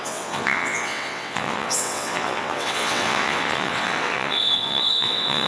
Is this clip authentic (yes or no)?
no